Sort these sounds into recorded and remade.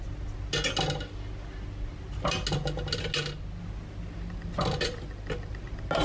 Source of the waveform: recorded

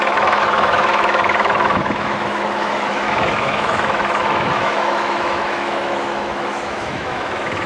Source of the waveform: remade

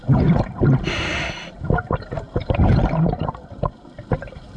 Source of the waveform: recorded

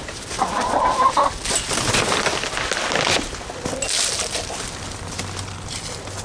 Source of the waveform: recorded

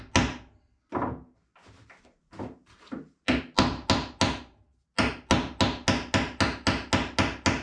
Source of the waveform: recorded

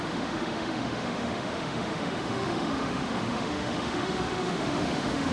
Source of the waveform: remade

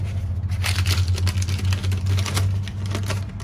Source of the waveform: recorded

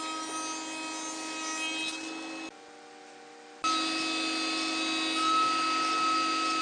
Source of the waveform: recorded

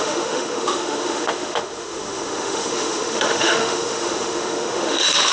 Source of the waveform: remade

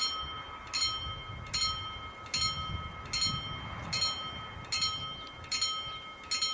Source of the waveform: recorded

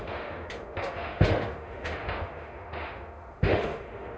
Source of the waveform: remade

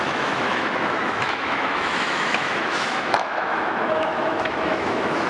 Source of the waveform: remade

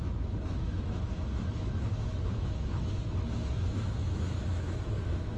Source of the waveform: remade